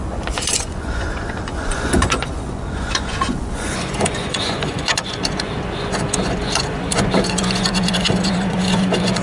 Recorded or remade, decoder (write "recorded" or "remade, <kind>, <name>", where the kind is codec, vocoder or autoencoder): remade, vocoder, Vocos